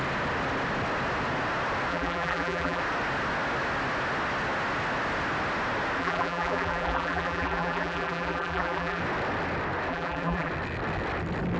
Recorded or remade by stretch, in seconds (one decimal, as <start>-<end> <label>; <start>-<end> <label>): 0.0-1.9 recorded; 1.9-2.8 remade; 2.8-6.0 recorded; 6.0-9.0 remade; 9.0-9.9 recorded; 9.9-10.5 remade; 10.5-11.6 recorded